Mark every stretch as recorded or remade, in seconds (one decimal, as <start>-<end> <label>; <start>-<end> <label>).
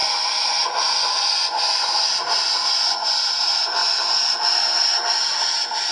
0.0-2.1 remade; 2.1-2.7 recorded; 2.7-3.4 remade; 3.4-5.9 recorded